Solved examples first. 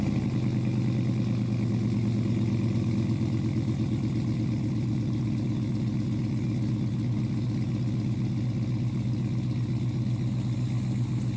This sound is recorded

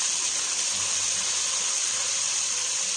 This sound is recorded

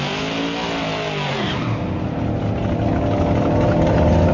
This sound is recorded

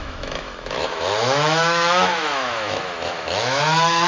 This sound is remade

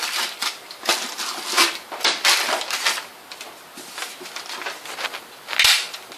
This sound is recorded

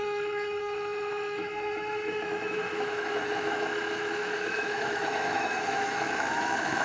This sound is remade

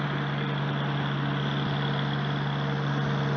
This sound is recorded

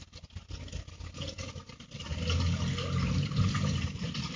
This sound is recorded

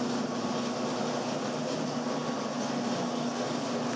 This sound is recorded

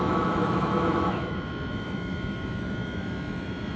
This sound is remade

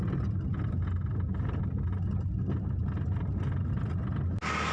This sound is recorded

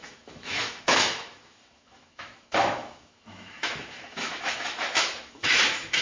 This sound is remade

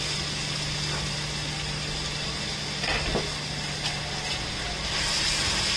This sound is recorded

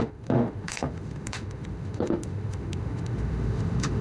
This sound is remade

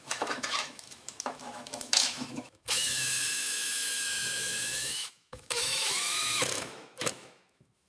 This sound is remade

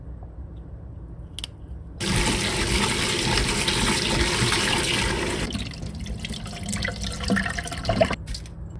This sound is recorded